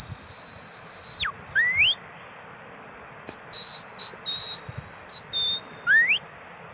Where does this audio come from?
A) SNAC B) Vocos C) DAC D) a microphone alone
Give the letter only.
D